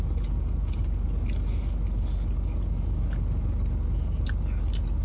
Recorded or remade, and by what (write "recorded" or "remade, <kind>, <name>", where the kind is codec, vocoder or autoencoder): recorded